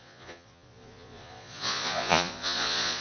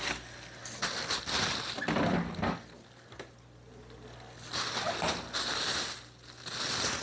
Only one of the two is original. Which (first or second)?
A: second